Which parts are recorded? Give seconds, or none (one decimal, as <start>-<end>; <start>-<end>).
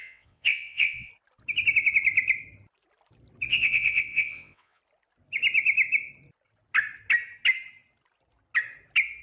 1.1-3.5; 4.8-9.2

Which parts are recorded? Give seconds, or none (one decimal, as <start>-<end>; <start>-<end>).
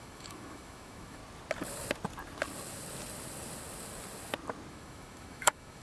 1.2-4.7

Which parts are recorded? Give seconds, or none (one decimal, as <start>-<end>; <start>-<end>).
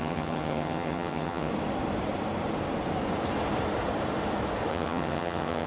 1.5-4.7